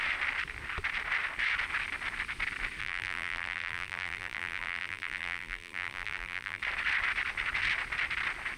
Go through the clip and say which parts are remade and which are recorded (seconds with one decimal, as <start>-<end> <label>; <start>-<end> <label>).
0.0-2.8 recorded; 2.8-6.6 remade; 6.6-8.6 recorded

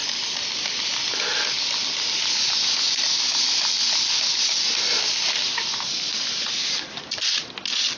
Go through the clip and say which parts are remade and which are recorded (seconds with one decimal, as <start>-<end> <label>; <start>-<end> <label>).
0.0-8.0 recorded

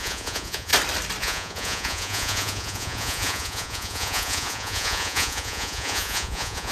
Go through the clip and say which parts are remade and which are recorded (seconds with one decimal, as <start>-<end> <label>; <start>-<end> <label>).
0.0-0.7 remade; 0.7-1.2 recorded; 1.2-6.7 remade

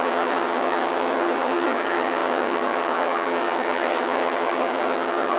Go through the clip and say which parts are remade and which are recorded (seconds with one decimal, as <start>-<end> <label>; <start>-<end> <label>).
0.0-5.4 remade

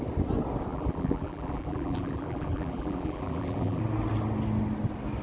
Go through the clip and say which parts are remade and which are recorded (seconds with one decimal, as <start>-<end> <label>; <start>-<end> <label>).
0.0-0.7 recorded; 0.7-3.8 remade; 3.8-5.2 recorded

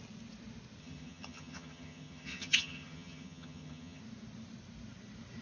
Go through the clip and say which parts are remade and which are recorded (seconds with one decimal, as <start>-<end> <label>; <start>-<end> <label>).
0.0-0.8 recorded; 0.8-4.0 remade; 4.0-5.4 recorded